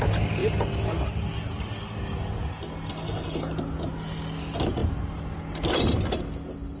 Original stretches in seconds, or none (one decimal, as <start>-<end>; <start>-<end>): 0.0-6.8